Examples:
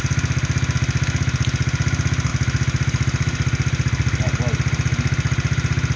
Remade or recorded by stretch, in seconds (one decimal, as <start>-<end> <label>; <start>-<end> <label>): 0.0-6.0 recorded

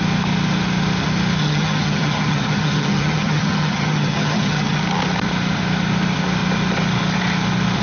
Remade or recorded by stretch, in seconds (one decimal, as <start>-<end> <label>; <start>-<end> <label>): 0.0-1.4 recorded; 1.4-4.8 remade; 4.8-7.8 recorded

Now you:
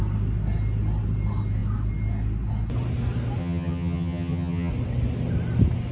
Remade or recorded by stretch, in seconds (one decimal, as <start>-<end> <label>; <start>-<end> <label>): 0.0-3.4 recorded; 3.4-4.7 remade; 4.7-5.9 recorded